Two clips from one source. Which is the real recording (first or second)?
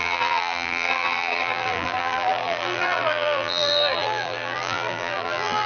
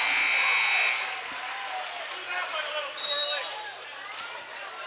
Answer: second